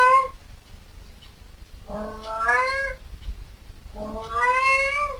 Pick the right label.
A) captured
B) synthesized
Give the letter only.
A